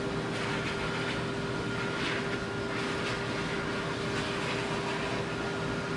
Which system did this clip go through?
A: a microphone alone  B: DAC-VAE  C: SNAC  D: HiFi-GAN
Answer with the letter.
A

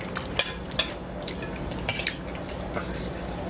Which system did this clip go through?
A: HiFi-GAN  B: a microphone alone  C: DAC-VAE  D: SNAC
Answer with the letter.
B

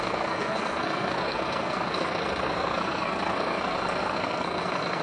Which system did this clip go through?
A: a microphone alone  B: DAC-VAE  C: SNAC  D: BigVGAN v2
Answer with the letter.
C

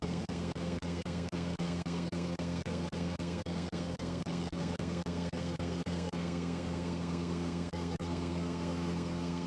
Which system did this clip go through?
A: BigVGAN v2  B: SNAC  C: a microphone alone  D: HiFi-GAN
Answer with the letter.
B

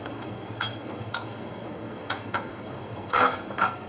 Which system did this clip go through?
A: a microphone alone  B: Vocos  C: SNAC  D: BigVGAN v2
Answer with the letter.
C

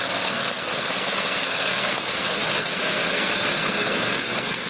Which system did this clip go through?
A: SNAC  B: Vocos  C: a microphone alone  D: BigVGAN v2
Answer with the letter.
A